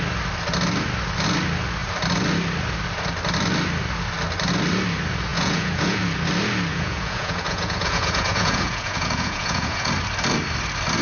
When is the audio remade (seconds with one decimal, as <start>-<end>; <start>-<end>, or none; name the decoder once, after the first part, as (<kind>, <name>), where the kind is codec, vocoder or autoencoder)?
5.3-6.0 (vocoder, Vocos); 6.7-9.9